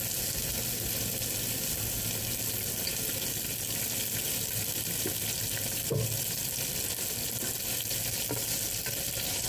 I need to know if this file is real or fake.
real